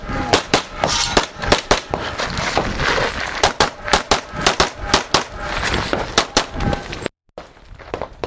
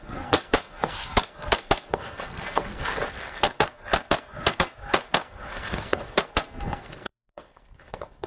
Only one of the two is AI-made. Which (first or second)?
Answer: second